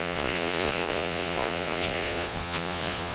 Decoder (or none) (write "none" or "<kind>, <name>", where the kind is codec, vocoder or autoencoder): vocoder, Vocos